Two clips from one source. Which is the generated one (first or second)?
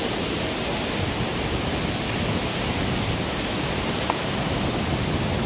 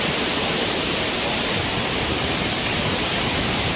second